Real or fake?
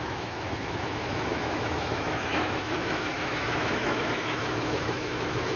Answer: fake